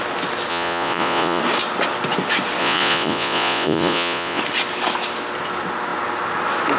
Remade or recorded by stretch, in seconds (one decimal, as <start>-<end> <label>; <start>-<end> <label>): 0.0-0.5 recorded; 0.5-1.4 remade; 1.4-2.6 recorded; 2.6-4.4 remade; 4.4-6.8 recorded